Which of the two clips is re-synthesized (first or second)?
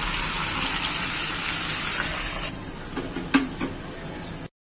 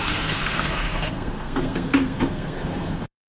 second